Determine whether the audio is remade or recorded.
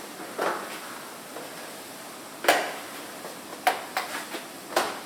recorded